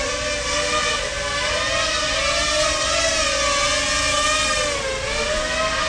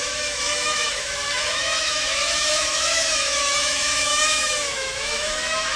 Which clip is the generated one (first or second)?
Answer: second